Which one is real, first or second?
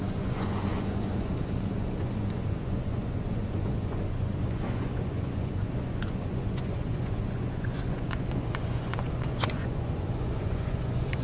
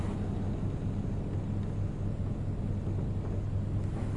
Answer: second